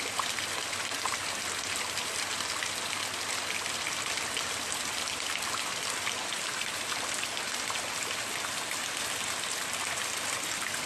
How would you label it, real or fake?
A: real